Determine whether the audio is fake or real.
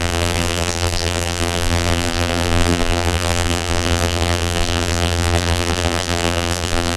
fake